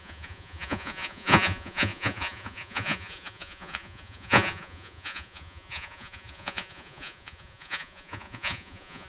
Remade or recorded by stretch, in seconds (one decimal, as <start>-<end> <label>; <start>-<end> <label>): 0.0-9.1 remade